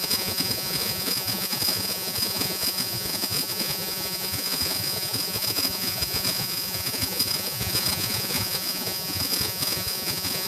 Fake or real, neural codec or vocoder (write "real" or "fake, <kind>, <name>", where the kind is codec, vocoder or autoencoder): fake, vocoder, Vocos